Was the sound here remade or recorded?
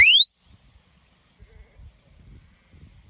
recorded